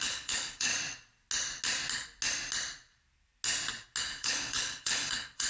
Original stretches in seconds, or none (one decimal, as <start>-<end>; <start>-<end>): 0.7-4.0